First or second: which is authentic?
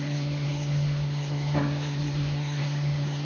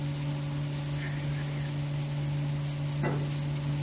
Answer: second